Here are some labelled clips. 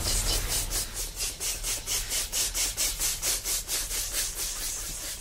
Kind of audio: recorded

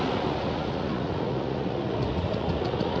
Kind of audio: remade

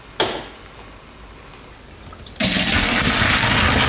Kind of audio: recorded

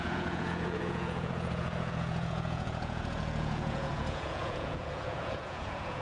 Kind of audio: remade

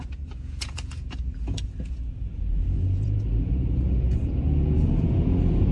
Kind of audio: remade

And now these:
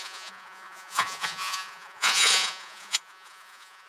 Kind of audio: remade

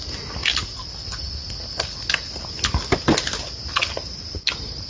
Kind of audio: recorded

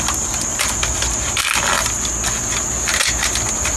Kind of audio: recorded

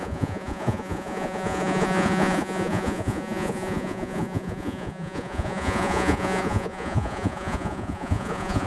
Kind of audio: remade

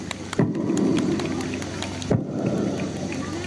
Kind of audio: recorded